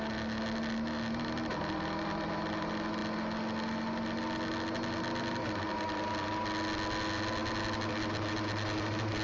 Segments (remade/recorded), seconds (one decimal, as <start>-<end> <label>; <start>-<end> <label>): 0.0-9.2 recorded